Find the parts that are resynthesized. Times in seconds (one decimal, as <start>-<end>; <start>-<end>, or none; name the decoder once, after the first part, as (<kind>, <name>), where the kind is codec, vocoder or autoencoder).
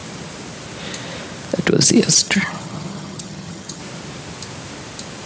2.2-3.8 (vocoder, HiFi-GAN)